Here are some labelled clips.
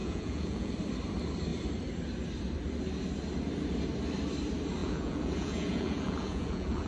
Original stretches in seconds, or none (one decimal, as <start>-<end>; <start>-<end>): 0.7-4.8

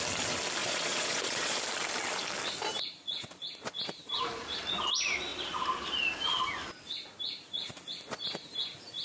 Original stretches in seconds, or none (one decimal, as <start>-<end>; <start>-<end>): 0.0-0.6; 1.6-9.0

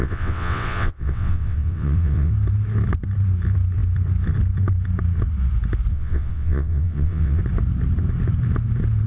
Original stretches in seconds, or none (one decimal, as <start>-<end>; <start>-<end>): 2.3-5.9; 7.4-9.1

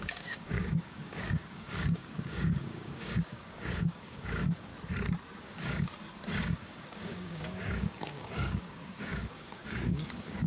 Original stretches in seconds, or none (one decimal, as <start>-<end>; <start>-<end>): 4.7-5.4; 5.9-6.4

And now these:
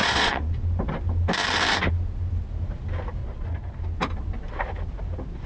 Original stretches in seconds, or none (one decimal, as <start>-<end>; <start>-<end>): 0.6-3.2; 3.7-5.5

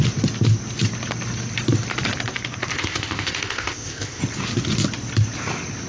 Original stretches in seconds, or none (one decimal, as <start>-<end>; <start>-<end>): 0.0-2.7; 4.2-5.9

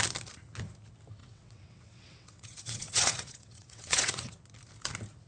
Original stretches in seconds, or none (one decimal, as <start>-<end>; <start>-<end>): 0.0-1.2; 4.4-5.3